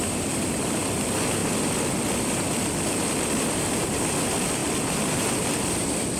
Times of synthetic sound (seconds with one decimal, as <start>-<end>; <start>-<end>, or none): 0.0-1.4; 2.9-4.6; 5.5-6.2